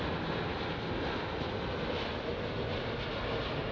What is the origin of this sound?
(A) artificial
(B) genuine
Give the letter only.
B